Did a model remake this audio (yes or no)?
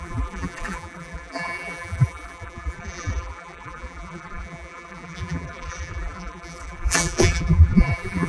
yes